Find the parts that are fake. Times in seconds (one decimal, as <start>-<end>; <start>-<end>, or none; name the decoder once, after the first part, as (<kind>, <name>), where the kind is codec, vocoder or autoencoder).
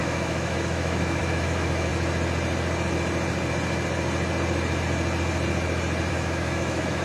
0.0-1.9 (autoencoder, DAC-VAE); 6.1-7.0